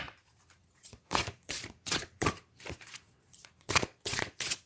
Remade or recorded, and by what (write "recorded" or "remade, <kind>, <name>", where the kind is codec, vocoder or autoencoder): remade, vocoder, Vocos